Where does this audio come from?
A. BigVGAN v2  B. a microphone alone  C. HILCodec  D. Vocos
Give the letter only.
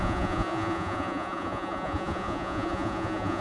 D